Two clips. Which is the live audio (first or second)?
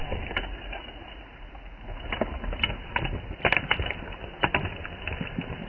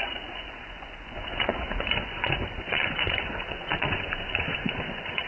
first